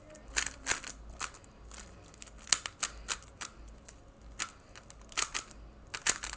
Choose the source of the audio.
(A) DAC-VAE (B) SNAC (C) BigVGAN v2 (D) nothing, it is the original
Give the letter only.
D